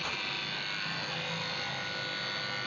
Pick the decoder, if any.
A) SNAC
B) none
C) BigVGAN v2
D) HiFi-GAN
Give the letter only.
B